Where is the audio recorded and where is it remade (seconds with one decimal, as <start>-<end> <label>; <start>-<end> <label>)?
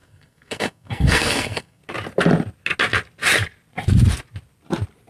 0.0-1.8 remade; 1.8-5.1 recorded